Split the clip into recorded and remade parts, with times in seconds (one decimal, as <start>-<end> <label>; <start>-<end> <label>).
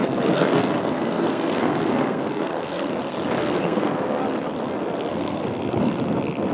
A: 0.0-2.9 remade; 2.9-3.4 recorded; 3.4-4.2 remade; 4.2-5.1 recorded; 5.1-5.9 remade; 5.9-6.5 recorded